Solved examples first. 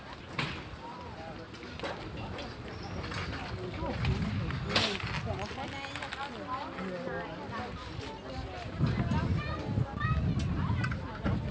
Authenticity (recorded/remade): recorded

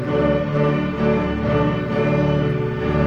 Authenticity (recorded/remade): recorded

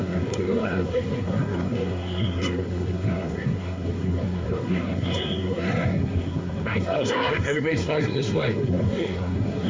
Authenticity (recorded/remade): remade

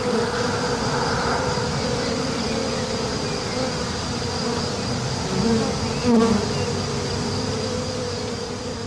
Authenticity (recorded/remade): recorded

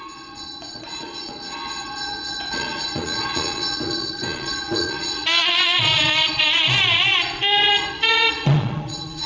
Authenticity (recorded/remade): remade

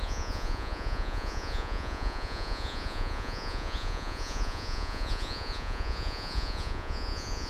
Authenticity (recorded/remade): remade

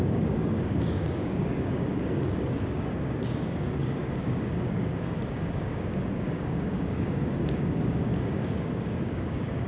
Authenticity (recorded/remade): remade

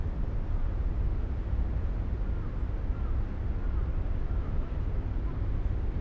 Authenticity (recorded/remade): recorded